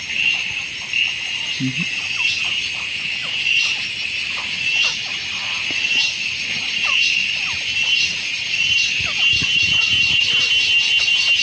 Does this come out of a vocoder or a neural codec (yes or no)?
no